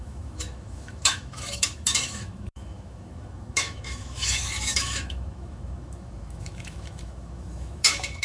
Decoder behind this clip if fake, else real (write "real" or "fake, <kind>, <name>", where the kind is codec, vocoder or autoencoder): fake, autoencoder, DAC-VAE